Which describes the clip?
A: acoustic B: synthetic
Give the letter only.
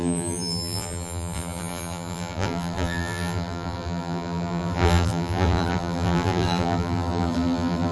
B